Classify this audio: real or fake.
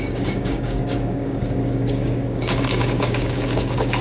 fake